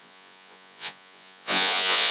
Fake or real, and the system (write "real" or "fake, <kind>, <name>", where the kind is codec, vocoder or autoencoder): fake, vocoder, Vocos